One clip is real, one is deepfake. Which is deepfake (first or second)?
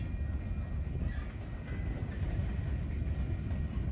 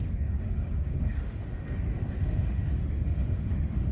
second